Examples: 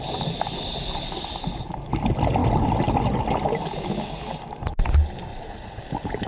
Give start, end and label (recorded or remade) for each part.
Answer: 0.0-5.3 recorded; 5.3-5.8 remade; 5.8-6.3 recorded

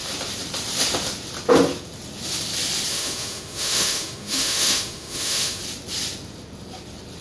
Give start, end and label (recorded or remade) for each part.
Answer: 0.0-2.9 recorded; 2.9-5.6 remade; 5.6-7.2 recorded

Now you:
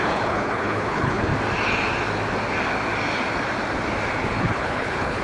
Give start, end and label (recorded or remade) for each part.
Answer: 0.0-1.3 remade; 1.3-4.4 recorded; 4.4-5.2 remade

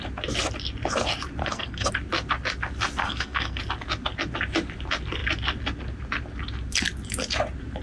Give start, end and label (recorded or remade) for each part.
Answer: 0.0-1.4 recorded; 1.4-1.9 remade; 1.9-3.0 recorded; 3.0-3.6 remade; 3.6-7.8 recorded

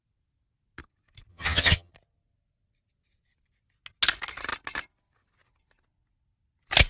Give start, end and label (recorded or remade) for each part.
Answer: 0.0-1.3 recorded; 1.3-1.9 remade; 1.9-6.9 recorded

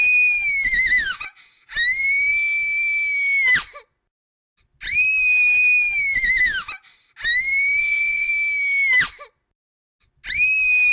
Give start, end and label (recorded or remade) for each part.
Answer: 0.0-1.1 recorded; 1.1-1.7 remade; 1.7-7.8 recorded; 7.8-8.3 remade; 8.3-10.9 recorded